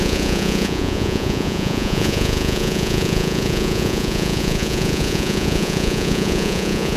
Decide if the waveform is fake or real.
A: fake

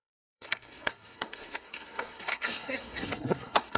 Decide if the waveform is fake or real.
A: fake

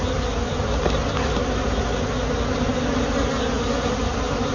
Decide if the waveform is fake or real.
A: real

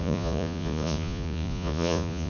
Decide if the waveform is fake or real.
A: fake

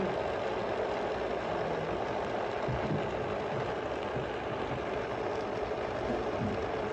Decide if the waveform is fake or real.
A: real